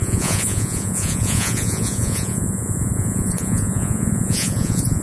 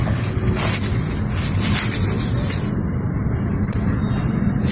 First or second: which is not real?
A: first